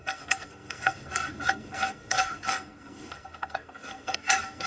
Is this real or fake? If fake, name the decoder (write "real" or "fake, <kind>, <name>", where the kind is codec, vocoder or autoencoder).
fake, codec, SNAC